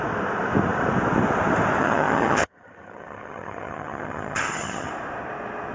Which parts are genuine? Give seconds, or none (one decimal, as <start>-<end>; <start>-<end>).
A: 0.0-1.8; 4.9-5.7